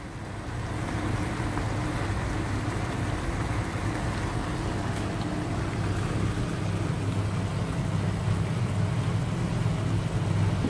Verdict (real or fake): real